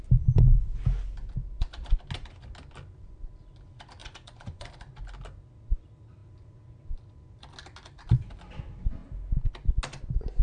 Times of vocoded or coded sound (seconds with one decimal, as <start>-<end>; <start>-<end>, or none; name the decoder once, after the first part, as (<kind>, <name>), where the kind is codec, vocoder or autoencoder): 4.0-4.7 (vocoder, Vocos)